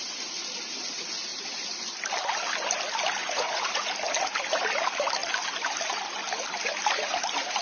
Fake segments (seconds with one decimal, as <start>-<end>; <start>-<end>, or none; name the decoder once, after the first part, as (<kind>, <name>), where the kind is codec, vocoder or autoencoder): 3.2-3.9 (vocoder, Vocos)